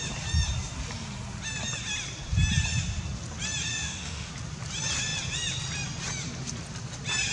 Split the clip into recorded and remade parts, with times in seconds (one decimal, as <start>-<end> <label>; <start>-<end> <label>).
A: 0.0-3.7 recorded; 3.7-4.3 remade; 4.3-7.3 recorded